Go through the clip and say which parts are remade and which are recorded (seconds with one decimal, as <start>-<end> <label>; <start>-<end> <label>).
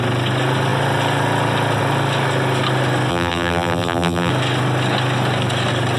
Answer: 0.0-3.1 recorded; 3.1-4.3 remade; 4.3-6.0 recorded